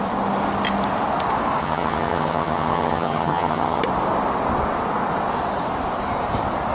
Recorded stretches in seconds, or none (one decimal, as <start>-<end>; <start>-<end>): 0.0-1.6; 3.8-6.7